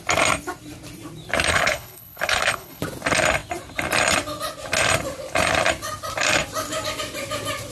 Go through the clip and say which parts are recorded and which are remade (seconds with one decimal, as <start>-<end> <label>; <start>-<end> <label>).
0.0-1.5 recorded; 1.5-2.8 remade; 2.8-7.7 recorded